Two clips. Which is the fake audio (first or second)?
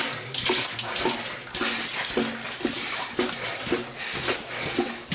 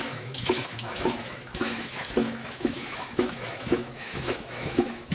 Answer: second